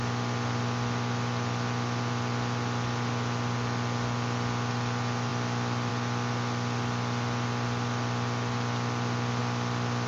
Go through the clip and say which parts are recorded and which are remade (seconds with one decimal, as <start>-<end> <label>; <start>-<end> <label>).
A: 0.0-10.1 recorded